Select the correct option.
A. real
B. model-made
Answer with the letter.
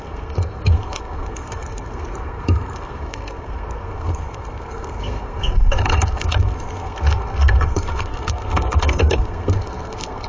B